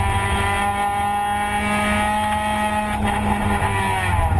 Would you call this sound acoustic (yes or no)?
yes